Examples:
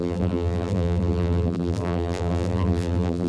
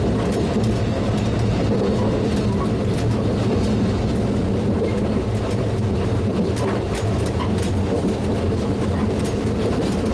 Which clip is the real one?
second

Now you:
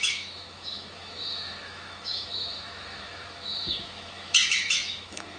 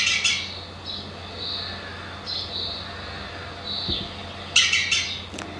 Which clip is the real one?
second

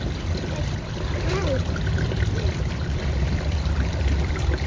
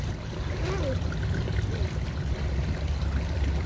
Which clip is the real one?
second